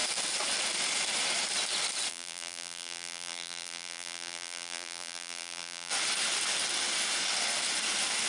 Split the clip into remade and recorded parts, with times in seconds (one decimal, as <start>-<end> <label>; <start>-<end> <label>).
0.0-2.1 recorded; 2.1-5.9 remade; 5.9-8.3 recorded

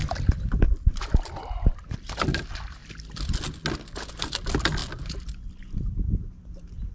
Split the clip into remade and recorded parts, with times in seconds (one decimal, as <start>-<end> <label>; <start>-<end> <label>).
0.0-2.1 remade; 2.1-6.9 recorded

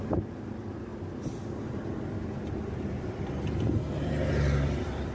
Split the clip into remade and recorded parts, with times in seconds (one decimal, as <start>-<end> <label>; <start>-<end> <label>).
0.0-5.1 remade